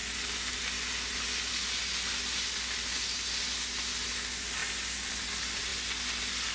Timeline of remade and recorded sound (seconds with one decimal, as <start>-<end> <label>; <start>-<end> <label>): 0.0-6.5 recorded